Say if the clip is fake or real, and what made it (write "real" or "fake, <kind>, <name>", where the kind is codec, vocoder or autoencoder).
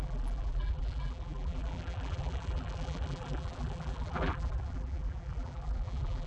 fake, vocoder, BigVGAN v2